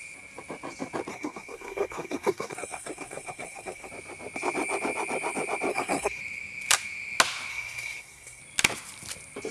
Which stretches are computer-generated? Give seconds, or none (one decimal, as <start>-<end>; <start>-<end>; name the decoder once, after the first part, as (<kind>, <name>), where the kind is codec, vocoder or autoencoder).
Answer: 1.1-3.9 (codec, SNAC); 5.7-6.2; 7.5-8.4